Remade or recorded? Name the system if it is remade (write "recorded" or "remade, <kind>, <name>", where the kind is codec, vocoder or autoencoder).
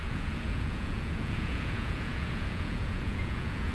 remade, vocoder, Vocos